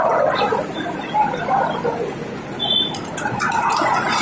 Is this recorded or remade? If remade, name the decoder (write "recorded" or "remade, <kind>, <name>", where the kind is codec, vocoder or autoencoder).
recorded